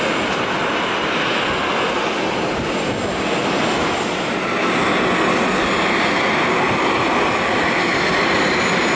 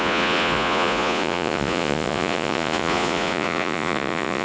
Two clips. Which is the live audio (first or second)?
first